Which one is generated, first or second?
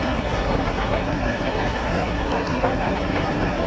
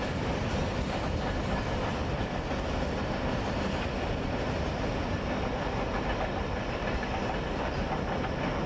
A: first